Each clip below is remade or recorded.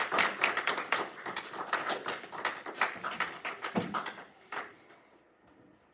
recorded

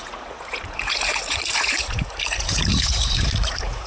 remade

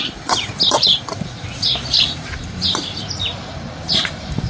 remade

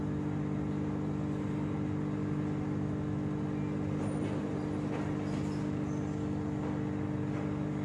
recorded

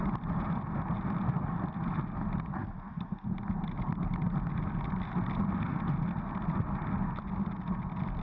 recorded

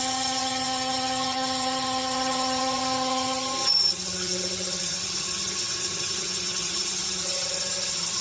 remade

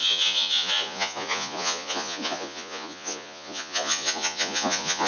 remade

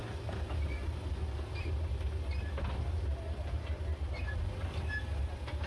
recorded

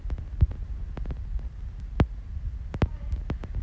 recorded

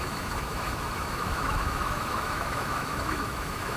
remade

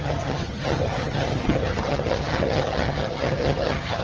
remade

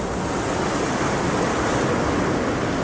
recorded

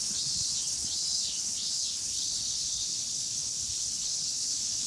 remade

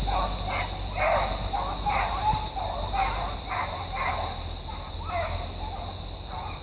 recorded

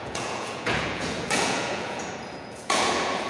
remade